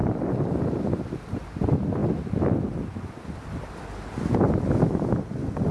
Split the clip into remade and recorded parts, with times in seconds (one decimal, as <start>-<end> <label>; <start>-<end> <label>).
0.0-5.7 recorded